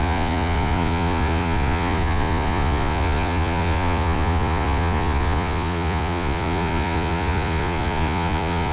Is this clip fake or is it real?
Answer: fake